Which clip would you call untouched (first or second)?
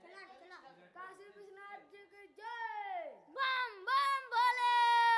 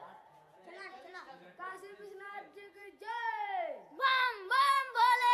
first